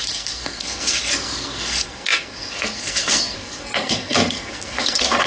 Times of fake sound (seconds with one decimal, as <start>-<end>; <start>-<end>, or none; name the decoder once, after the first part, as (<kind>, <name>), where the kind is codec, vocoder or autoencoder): 0.0-5.3 (codec, SNAC)